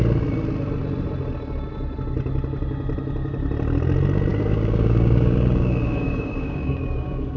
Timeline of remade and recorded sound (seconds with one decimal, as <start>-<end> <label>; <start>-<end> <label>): 0.0-4.3 recorded; 4.3-7.4 remade